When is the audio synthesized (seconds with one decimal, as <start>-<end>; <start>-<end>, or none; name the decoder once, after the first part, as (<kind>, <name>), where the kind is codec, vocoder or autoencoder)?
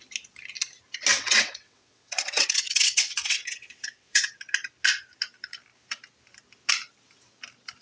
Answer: 1.1-4.2 (vocoder, WaveNeXt)